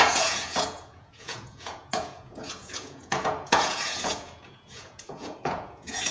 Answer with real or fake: fake